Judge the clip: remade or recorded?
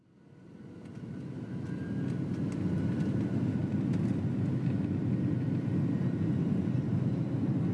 recorded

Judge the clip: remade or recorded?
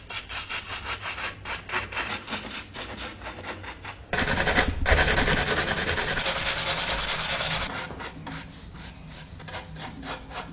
recorded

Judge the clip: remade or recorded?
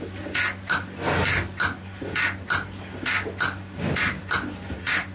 recorded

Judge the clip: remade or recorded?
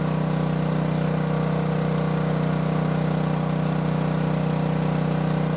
recorded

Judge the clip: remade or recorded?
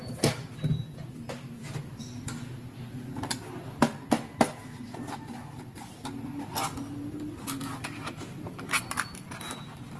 recorded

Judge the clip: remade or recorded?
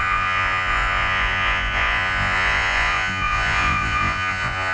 remade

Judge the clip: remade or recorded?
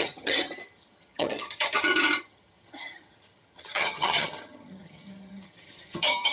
remade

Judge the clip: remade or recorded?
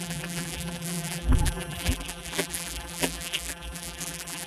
remade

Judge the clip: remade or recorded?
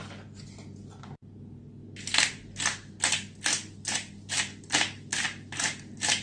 recorded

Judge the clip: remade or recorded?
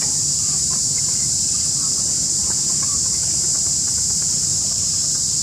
remade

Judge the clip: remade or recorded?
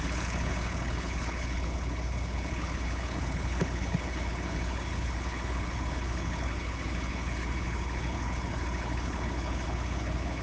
remade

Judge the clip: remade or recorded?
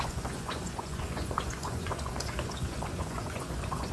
remade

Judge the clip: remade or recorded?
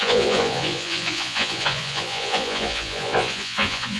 remade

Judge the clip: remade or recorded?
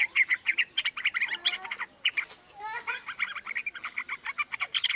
recorded